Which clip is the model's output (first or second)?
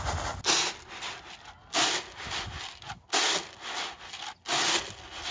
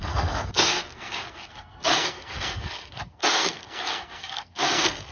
second